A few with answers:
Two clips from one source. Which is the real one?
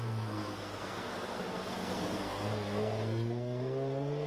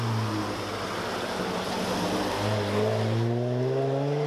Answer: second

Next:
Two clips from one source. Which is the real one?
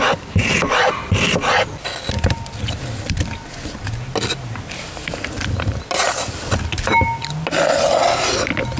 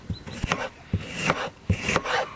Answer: first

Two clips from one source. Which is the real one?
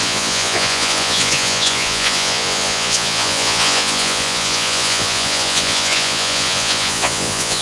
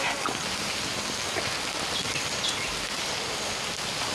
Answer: second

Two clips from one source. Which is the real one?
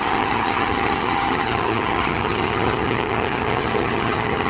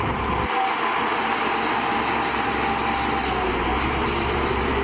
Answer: second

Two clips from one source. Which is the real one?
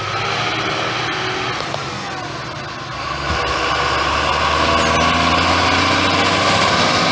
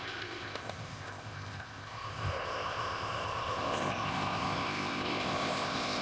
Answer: first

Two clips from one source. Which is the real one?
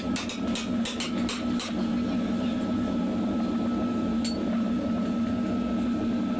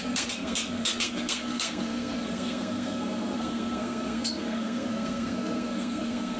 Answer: first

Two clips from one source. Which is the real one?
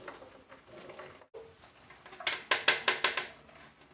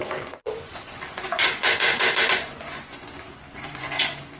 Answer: first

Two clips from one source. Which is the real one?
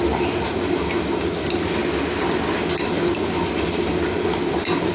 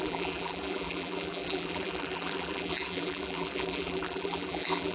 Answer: first